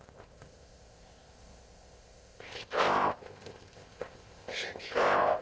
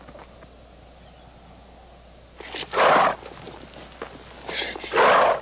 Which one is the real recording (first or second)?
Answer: second